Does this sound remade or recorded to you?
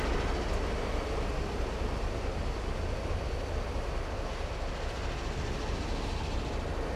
recorded